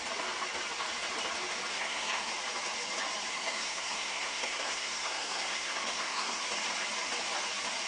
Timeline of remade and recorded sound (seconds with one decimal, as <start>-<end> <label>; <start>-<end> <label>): 0.0-1.7 recorded; 1.7-2.3 remade; 2.3-3.3 recorded; 3.3-6.4 remade; 6.4-7.9 recorded